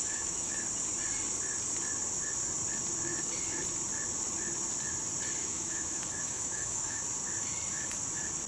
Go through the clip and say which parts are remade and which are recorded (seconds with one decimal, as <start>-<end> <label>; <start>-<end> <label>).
0.0-0.5 remade; 0.5-5.4 recorded; 5.4-7.0 remade; 7.0-8.5 recorded